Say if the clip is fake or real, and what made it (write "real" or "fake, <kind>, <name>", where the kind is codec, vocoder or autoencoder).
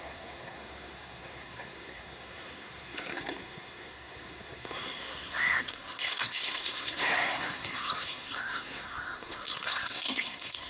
fake, codec, SNAC